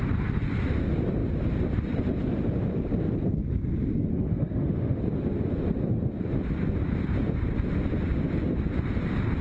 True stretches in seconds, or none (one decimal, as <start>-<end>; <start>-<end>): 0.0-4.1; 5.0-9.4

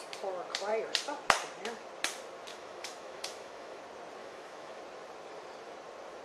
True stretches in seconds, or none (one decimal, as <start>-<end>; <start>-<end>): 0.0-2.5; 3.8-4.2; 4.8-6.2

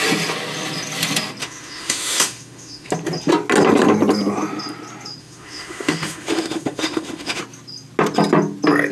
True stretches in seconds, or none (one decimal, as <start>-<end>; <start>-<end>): 0.0-1.4; 2.9-5.2; 7.4-8.9